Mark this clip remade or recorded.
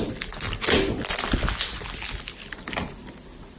recorded